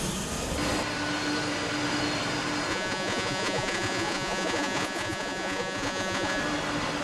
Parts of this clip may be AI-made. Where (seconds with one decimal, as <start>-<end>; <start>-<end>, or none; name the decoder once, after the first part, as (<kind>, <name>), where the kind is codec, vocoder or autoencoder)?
2.7-6.4 (vocoder, Vocos)